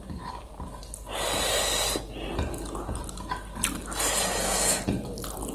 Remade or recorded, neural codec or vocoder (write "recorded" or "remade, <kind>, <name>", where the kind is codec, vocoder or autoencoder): recorded